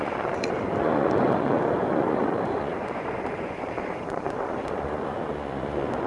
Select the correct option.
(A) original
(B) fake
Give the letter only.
B